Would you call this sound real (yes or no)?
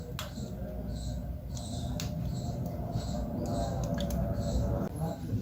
yes